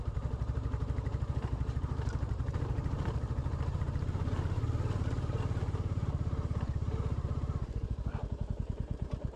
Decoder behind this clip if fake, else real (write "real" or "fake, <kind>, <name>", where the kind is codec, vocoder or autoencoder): fake, vocoder, BigVGAN v2